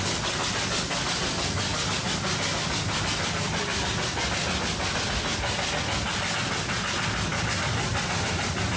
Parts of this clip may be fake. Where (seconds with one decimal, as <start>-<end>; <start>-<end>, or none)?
none